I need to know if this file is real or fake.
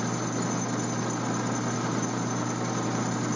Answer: real